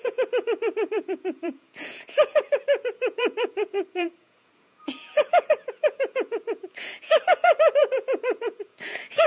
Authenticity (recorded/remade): remade